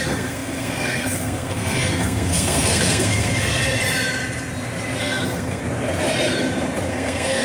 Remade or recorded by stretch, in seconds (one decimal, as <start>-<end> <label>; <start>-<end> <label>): 0.0-3.6 remade; 3.6-5.0 recorded; 5.0-5.6 remade; 5.6-6.9 recorded; 6.9-7.4 remade